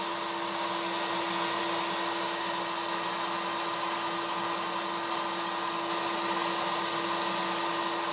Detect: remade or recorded recorded